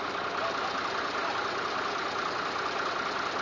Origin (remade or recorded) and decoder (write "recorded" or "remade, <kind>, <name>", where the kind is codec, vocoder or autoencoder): recorded